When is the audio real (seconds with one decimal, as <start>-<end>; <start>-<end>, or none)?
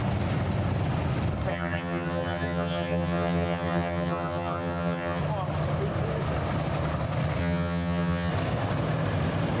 0.0-1.5; 5.2-7.4; 8.3-9.6